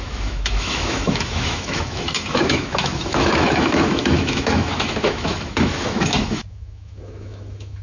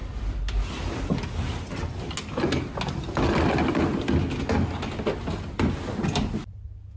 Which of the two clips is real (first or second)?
second